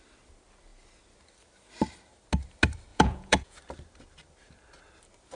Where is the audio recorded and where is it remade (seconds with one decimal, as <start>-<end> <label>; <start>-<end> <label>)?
0.0-2.9 recorded; 2.9-3.6 remade; 3.6-5.4 recorded